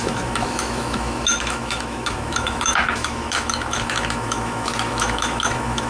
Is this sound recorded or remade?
remade